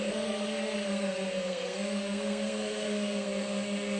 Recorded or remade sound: remade